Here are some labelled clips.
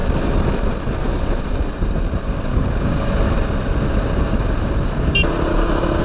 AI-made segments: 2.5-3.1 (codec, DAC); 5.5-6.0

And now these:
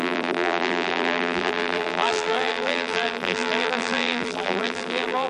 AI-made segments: 0.0-5.3 (vocoder, BigVGAN v2)

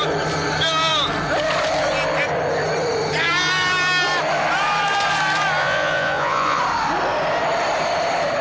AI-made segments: 5.6-6.6 (vocoder, Vocos)

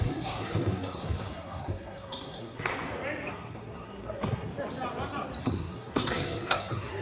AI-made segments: 0.0-2.7 (codec, SNAC); 3.3-4.5; 5.4-7.0